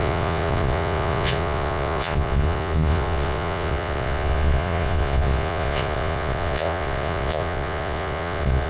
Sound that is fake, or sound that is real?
fake